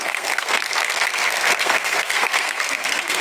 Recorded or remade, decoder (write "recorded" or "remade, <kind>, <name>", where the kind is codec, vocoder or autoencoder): remade, codec, SNAC